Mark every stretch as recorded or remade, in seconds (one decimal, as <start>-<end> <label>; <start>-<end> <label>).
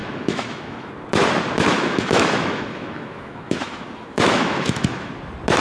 0.0-0.9 remade; 0.9-1.7 recorded; 1.7-5.1 remade; 5.1-5.6 recorded